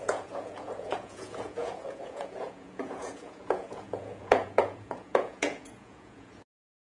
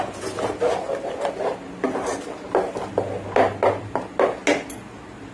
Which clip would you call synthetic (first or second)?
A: first